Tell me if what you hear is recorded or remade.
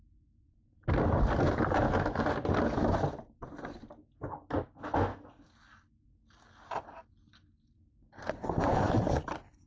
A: recorded